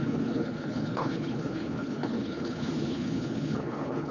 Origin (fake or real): fake